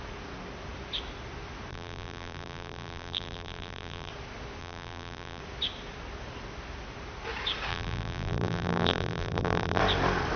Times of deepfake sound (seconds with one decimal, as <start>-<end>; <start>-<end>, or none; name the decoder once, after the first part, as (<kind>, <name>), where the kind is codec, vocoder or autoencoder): 1.7-4.1 (vocoder, BigVGAN v2); 4.6-5.4; 7.7-9.8